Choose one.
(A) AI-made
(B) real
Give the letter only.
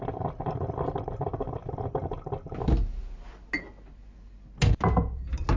B